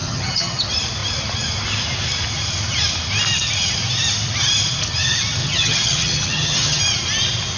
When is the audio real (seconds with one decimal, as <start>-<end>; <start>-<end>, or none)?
0.6-5.4; 6.8-7.6